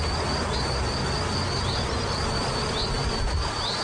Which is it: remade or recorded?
recorded